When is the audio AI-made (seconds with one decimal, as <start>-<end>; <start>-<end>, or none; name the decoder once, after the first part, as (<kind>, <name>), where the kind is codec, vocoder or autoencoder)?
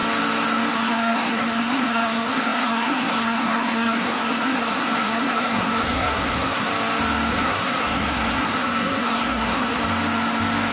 0.7-6.7 (codec, SNAC); 7.3-9.8